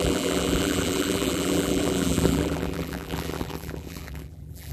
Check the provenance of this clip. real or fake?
fake